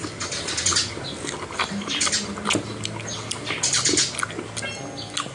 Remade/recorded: recorded